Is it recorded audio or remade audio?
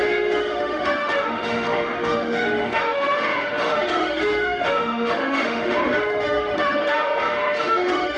remade